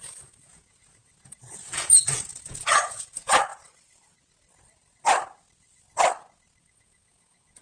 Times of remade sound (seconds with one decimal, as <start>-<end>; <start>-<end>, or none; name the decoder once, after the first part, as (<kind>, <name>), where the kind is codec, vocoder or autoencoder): 0.0-3.5 (vocoder, Vocos); 6.6-7.6